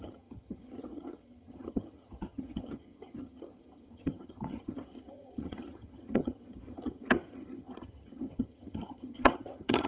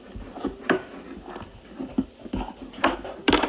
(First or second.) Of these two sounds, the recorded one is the second